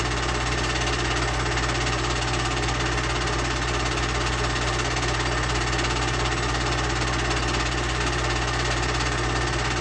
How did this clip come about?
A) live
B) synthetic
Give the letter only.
A